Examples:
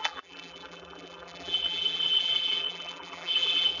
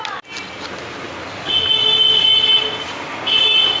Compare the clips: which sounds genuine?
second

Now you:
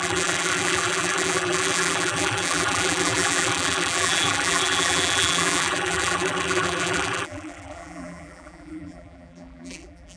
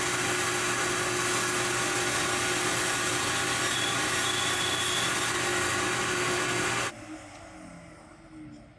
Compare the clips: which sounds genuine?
second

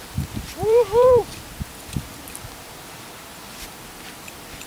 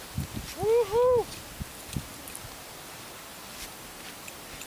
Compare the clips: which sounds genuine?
second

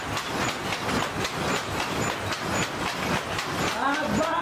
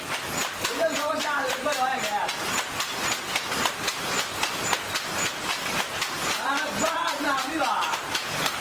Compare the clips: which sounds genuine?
first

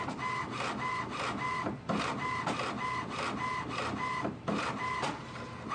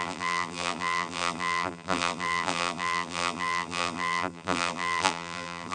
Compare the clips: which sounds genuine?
first